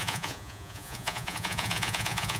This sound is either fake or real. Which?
fake